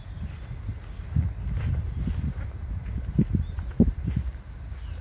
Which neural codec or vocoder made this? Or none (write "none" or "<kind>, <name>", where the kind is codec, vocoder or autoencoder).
none